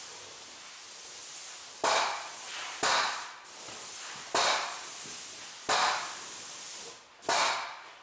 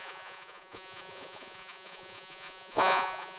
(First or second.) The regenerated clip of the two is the second